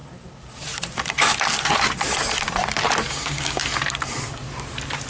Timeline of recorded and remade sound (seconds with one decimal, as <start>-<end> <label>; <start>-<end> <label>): 0.0-3.1 recorded; 3.1-3.6 remade; 3.6-5.1 recorded